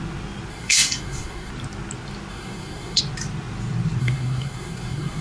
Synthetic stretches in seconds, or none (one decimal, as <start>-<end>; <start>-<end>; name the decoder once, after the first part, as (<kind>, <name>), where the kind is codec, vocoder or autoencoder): 0.5-1.5 (codec, SNAC); 2.3-3.0; 4.0-5.2